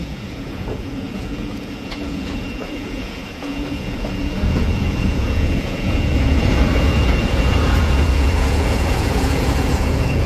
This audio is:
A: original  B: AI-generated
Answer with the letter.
B